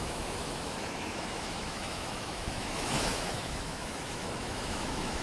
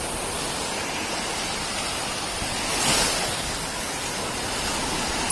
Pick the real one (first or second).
second